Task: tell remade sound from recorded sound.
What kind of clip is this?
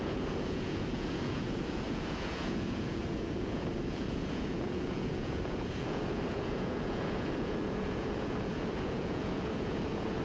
remade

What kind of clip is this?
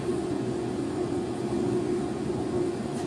remade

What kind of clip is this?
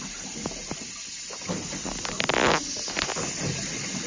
recorded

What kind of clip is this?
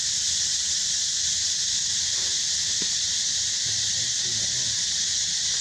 recorded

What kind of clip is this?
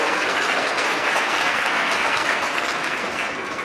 remade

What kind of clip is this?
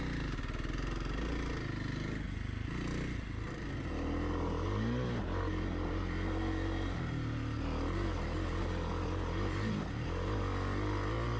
recorded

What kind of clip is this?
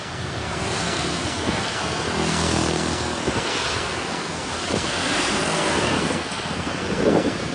remade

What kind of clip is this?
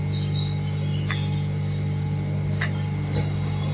recorded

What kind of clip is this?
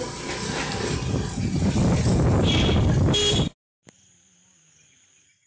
recorded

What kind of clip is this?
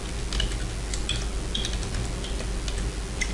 recorded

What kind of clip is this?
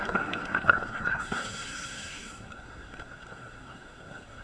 remade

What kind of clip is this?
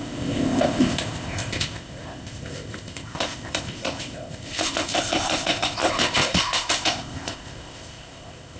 remade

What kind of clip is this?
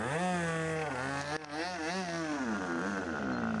recorded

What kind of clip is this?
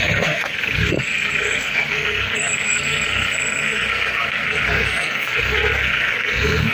remade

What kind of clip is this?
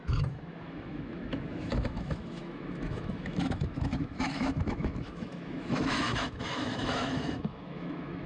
remade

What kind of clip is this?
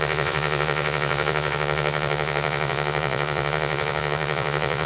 remade